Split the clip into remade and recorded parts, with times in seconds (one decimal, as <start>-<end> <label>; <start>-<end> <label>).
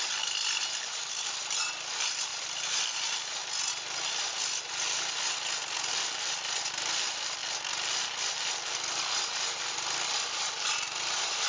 0.0-2.3 remade; 2.3-5.9 recorded; 5.9-11.5 remade